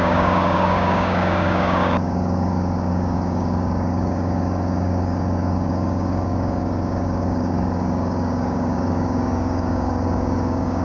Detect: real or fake fake